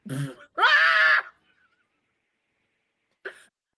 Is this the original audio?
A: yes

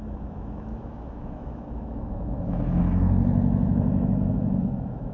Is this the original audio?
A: no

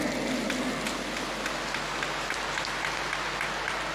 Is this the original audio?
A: yes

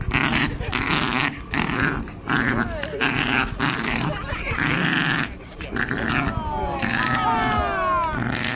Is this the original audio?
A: yes